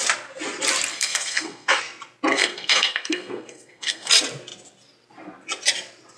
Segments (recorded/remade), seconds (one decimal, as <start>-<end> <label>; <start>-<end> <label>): 0.0-0.9 recorded; 0.9-1.8 remade; 1.8-2.3 recorded; 2.3-4.1 remade; 4.1-6.2 recorded